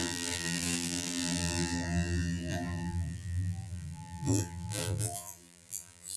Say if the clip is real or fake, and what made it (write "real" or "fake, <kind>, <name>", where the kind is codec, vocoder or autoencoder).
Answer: fake, vocoder, BigVGAN v2